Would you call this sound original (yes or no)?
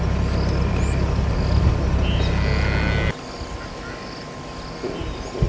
yes